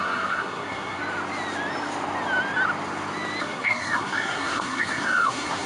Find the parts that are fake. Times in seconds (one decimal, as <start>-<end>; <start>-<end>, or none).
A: 0.0-1.0; 3.4-5.7